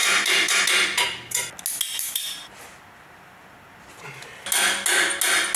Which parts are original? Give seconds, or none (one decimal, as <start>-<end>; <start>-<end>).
0.6-1.9; 2.5-5.6